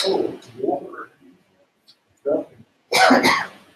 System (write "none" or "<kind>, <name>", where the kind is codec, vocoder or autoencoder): vocoder, Vocos